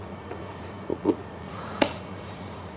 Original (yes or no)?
no